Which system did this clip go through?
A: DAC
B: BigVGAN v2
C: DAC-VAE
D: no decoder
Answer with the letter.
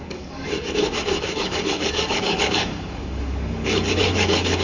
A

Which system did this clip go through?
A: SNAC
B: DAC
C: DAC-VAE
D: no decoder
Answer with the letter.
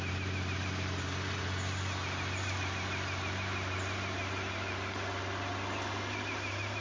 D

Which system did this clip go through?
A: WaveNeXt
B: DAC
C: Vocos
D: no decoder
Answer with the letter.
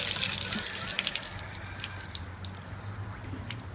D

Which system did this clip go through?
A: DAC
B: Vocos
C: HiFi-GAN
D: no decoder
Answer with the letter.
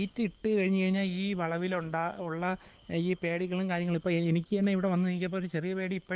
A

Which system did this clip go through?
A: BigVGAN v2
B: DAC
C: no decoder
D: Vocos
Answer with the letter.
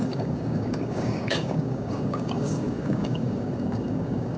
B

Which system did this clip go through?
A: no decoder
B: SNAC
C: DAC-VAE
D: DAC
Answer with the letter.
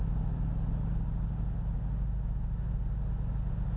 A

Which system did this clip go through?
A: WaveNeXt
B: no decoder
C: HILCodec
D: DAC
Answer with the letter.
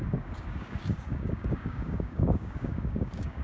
D